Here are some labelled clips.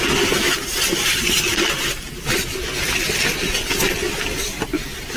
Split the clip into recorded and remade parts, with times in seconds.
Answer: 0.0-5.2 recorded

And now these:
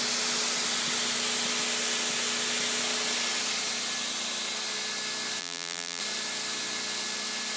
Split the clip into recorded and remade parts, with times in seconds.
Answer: 0.0-5.4 recorded; 5.4-6.0 remade; 6.0-7.6 recorded

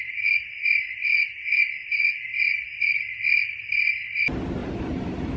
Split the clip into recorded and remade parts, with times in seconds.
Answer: 0.0-4.6 recorded; 4.6-5.4 remade

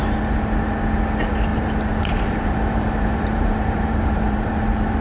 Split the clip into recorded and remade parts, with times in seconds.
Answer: 0.0-1.5 recorded; 1.5-4.5 remade; 4.5-5.0 recorded

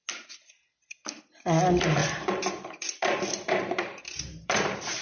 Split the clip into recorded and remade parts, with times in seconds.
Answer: 0.0-2.0 recorded; 2.0-5.0 remade